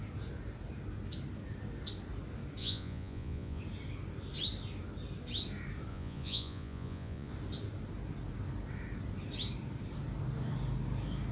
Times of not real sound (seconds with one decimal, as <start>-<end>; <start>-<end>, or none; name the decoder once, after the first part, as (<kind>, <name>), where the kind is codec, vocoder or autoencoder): 2.6-3.6 (vocoder, Vocos); 5.9-7.3